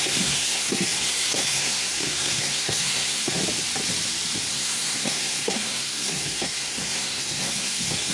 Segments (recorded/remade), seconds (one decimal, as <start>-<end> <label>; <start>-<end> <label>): 0.0-3.4 remade; 3.4-4.5 recorded; 4.5-8.1 remade